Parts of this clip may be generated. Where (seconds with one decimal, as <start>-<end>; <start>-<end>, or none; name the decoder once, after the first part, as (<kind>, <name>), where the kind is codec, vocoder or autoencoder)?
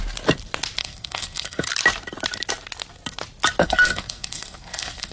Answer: 0.8-1.7 (codec, SNAC); 3.6-5.1